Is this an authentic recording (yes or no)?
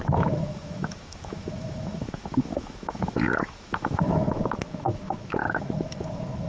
no